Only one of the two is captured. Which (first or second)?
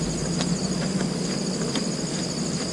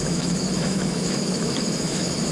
first